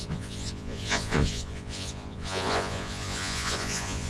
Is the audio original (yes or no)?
no